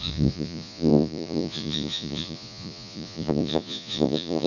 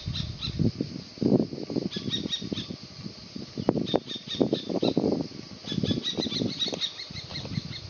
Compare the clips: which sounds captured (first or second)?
second